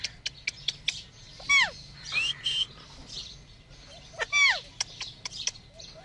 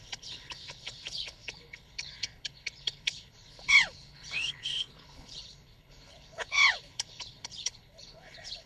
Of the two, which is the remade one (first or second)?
second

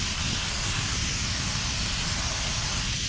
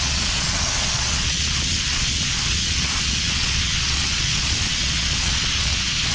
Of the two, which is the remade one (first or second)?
second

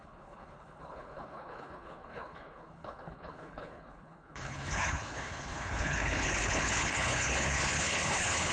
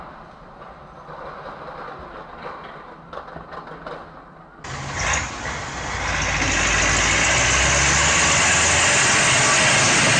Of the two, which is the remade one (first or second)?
first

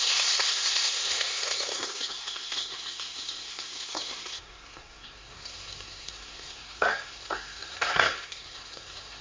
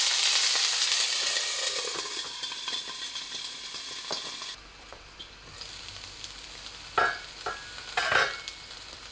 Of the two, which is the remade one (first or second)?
first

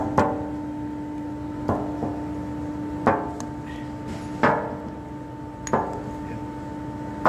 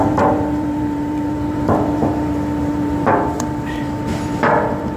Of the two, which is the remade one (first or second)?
second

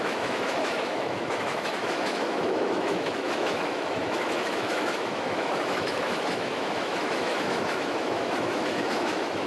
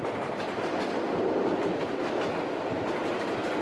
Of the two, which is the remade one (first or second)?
first